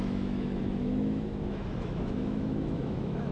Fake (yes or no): yes